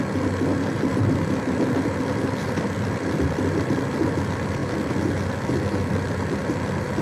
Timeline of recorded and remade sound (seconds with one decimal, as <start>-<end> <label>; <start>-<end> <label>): 0.0-7.0 recorded